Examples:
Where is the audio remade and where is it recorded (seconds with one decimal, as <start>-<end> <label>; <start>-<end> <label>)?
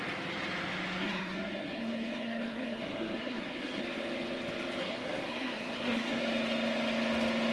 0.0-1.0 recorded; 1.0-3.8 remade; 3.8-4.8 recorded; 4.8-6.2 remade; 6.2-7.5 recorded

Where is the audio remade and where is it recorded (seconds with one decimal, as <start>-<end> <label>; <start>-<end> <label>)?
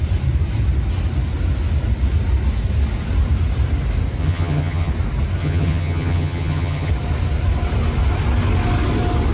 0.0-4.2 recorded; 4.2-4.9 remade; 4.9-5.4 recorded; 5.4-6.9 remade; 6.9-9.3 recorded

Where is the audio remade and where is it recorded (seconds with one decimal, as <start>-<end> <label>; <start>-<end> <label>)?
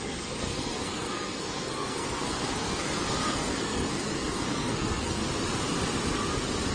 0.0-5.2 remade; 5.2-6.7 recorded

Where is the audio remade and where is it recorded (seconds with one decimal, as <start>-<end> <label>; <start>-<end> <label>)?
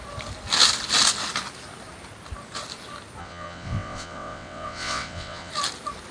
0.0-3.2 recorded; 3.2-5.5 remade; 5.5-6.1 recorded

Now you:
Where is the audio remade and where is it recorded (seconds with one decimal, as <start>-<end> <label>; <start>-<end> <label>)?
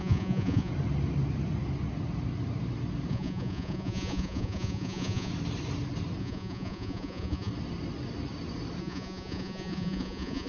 0.0-0.7 remade; 0.7-3.1 recorded; 3.1-5.3 remade; 5.3-6.2 recorded; 6.2-7.5 remade; 7.5-8.8 recorded; 8.8-10.5 remade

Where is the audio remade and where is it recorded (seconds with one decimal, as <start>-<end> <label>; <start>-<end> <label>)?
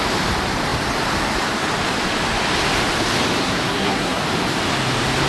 0.0-3.4 recorded; 3.4-4.2 remade; 4.2-5.3 recorded